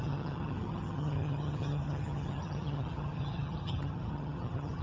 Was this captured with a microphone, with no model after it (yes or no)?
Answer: no